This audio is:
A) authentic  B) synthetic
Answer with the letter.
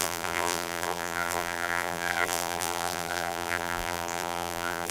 B